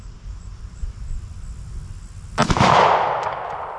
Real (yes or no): yes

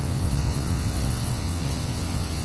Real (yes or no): no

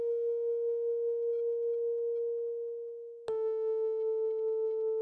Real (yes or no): yes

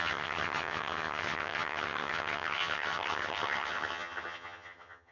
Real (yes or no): no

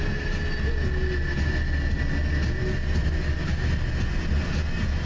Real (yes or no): yes